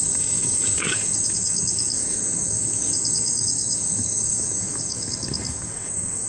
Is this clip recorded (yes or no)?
no